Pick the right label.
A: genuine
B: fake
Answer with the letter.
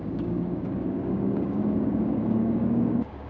B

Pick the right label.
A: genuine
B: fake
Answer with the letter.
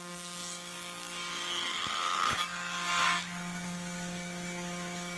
B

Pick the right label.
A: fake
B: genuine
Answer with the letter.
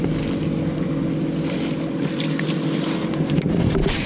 B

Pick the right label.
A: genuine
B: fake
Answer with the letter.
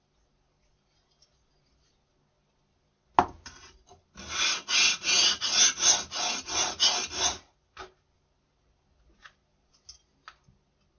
A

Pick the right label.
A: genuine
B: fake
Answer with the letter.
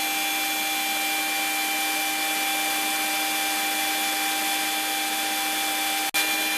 A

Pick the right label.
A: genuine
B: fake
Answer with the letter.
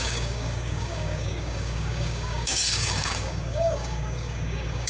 B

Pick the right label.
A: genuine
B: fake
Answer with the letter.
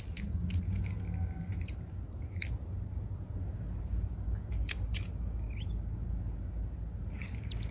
A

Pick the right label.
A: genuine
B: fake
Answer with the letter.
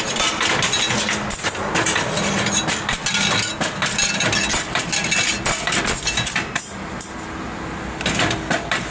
A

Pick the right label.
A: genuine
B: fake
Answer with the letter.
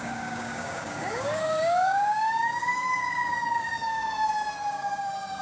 B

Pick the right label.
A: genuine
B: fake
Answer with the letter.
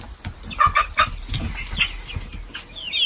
A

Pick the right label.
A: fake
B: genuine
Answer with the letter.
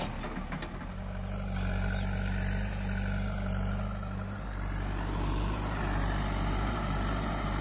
B